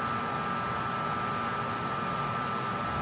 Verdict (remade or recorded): recorded